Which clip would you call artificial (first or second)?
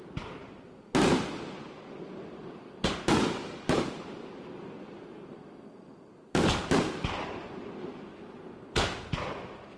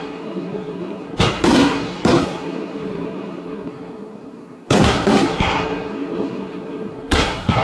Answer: second